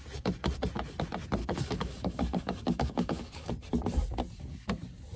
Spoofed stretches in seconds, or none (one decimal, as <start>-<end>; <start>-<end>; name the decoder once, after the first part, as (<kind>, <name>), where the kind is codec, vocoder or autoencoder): 1.4-3.5 (codec, DAC)